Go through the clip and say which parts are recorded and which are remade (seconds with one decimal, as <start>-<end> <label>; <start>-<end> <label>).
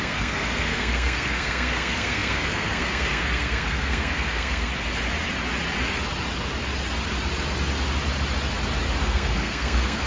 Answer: 0.0-4.7 remade; 4.7-9.0 recorded; 9.0-10.1 remade